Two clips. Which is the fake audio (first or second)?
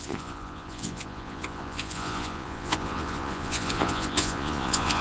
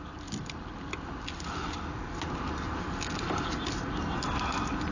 first